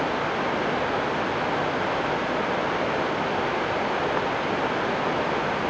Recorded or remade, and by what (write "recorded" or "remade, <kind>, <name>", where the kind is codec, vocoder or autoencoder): recorded